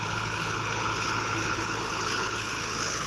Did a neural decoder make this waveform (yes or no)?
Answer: yes